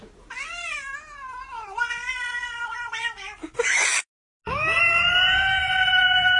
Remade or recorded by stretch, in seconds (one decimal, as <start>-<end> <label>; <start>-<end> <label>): 0.0-5.6 recorded; 5.6-6.4 remade